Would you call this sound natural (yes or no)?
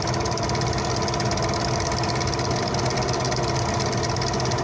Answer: yes